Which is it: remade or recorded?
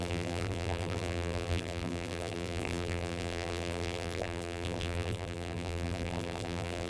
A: remade